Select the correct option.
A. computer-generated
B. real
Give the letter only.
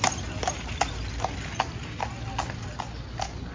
B